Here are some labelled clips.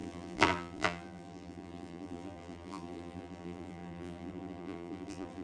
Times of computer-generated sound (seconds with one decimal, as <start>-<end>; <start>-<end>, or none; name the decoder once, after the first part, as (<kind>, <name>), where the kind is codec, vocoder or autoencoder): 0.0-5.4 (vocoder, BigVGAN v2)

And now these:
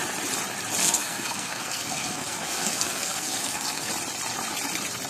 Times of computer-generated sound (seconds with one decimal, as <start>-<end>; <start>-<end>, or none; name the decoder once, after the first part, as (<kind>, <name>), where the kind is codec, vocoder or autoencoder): 0.8-3.9 (codec, SNAC)

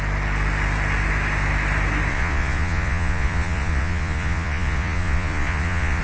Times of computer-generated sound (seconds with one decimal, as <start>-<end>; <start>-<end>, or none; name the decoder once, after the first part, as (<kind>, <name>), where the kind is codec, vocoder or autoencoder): 2.1-6.0 (vocoder, Vocos)